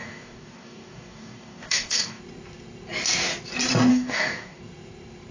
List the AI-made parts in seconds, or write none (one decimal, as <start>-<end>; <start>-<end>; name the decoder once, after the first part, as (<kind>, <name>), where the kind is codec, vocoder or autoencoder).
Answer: 0.0-2.2 (codec, DAC); 3.9-4.6